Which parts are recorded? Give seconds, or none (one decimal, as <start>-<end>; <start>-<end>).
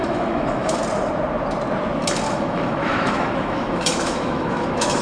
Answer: 0.8-2.3